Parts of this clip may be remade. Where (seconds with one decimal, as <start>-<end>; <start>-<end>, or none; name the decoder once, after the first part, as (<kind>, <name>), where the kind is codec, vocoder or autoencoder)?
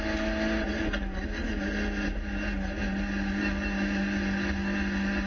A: none